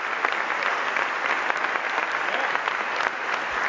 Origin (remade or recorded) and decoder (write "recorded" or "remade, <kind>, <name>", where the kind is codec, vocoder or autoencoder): recorded